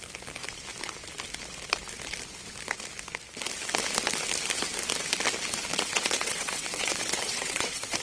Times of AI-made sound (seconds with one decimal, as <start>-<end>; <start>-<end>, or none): 5.7-8.0